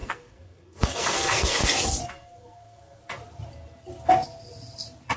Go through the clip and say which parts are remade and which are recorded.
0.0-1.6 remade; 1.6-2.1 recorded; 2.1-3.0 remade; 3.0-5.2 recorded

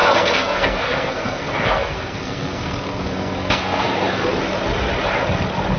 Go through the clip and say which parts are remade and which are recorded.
0.0-4.2 remade; 4.2-5.8 recorded

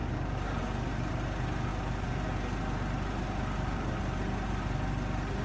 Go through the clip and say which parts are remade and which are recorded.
0.0-5.4 recorded

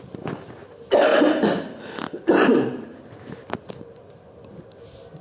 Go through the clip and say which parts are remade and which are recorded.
0.0-1.1 recorded; 1.1-3.5 remade; 3.5-5.2 recorded

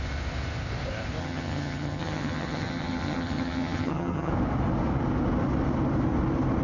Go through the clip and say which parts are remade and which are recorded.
0.0-1.2 recorded; 1.2-4.3 remade; 4.3-6.6 recorded

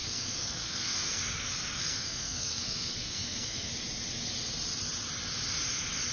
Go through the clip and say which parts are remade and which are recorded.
0.0-3.7 remade; 3.7-6.1 recorded